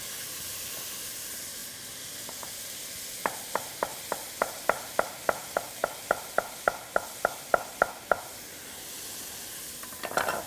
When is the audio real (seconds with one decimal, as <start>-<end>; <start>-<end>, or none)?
0.0-10.5

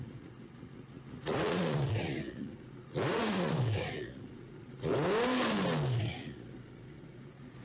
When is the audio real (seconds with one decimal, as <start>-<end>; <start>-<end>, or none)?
4.9-6.1

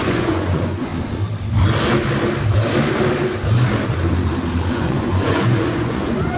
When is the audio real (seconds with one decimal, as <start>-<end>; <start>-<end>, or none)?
0.9-4.7